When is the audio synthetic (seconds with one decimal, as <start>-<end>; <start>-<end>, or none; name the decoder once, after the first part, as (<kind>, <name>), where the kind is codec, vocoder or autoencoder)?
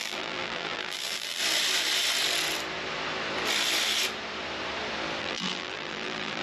0.0-1.4 (vocoder, BigVGAN v2); 5.2-6.4